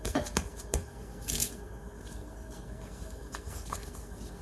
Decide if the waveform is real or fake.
fake